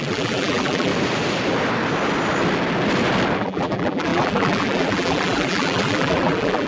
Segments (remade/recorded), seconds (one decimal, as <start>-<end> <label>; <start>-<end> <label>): 0.0-0.9 remade; 0.9-3.4 recorded; 3.4-6.7 remade